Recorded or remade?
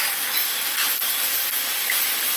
recorded